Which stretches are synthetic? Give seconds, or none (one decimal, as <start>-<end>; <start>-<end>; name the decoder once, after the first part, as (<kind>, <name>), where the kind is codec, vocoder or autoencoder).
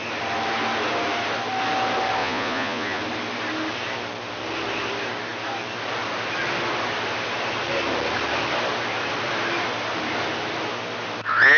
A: 2.2-3.0 (vocoder, Vocos)